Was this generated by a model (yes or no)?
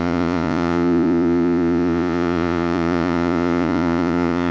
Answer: yes